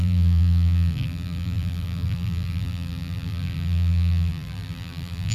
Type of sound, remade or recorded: remade